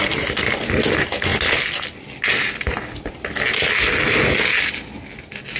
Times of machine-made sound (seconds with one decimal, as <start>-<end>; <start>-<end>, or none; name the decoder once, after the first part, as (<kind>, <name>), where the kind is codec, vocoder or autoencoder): none